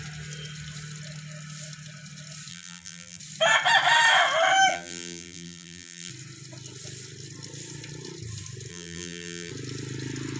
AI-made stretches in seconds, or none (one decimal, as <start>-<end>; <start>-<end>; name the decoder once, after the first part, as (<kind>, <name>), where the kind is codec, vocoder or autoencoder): 2.5-3.2 (vocoder, BigVGAN v2); 4.7-6.1; 8.7-9.5